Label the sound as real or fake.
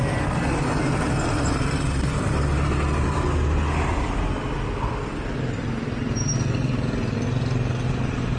real